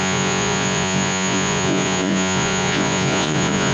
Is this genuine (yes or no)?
no